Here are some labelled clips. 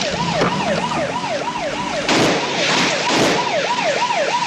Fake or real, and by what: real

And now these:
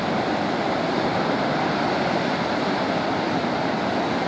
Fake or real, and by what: real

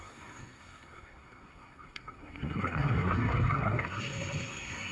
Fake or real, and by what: fake, codec, SNAC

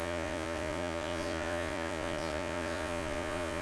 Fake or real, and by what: fake, vocoder, Vocos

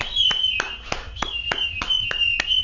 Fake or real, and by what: real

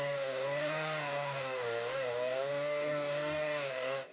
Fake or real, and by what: fake, codec, DAC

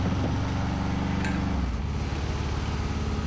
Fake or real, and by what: real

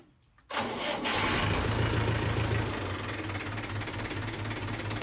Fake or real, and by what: real